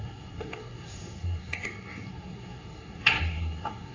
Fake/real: fake